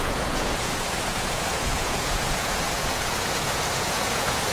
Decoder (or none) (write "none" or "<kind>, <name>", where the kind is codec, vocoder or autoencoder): vocoder, Vocos